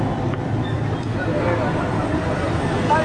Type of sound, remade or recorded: recorded